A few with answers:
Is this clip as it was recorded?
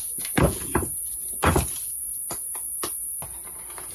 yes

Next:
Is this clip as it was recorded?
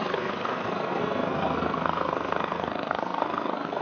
no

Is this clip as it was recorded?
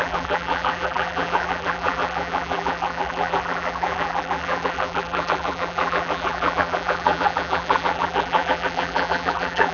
no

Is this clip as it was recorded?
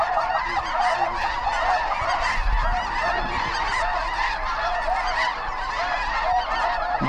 no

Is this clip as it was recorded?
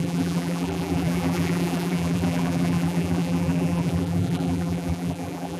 no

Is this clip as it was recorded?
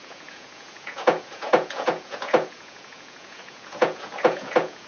no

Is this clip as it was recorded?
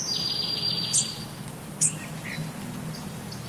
yes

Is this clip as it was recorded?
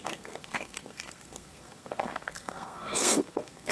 no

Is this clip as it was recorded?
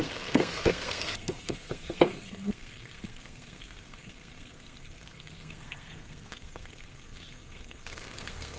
no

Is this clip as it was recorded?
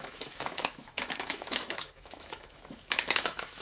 no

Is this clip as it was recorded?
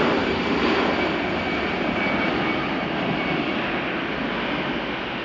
yes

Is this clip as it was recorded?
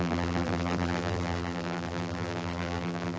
no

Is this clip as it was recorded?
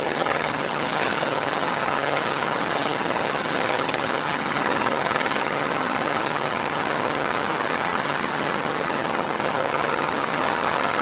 no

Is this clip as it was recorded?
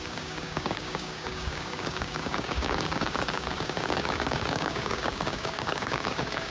no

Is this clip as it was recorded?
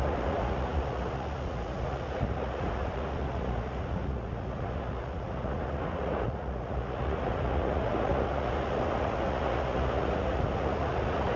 no